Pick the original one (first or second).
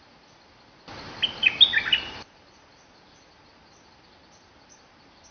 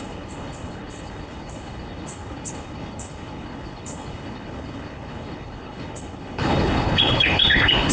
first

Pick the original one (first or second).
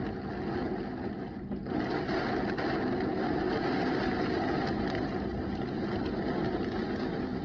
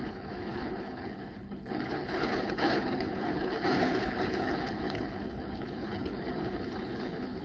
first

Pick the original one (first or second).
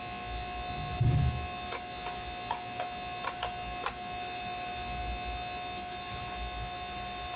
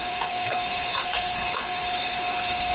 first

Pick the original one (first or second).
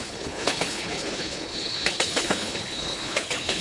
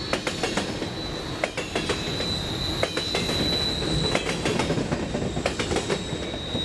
second